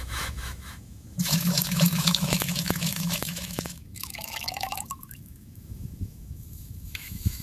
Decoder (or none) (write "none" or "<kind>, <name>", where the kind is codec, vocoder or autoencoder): autoencoder, DAC-VAE